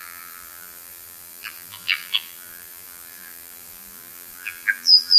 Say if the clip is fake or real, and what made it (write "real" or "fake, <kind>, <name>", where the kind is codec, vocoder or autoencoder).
fake, vocoder, BigVGAN v2